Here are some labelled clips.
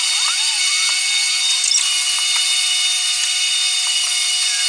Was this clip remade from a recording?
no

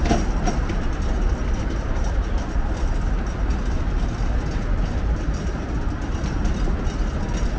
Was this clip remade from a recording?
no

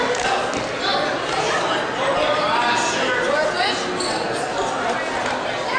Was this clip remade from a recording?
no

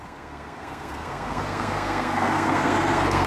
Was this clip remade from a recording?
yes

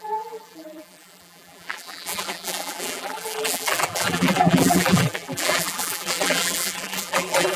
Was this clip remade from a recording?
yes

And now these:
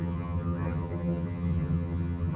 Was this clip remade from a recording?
yes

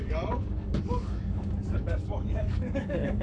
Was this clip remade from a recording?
yes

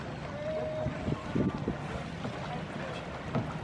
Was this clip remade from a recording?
no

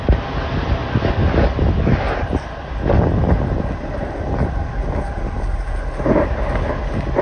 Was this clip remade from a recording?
no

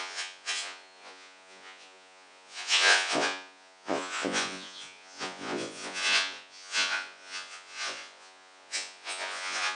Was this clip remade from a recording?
yes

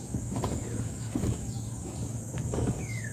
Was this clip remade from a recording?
yes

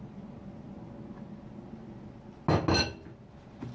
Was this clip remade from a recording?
no